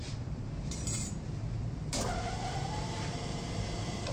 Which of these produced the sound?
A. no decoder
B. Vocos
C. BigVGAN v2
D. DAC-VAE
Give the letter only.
C